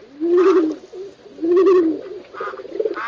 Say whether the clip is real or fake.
real